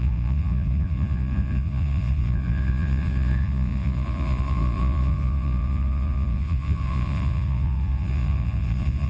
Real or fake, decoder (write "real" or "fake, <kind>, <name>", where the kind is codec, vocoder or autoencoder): fake, vocoder, Vocos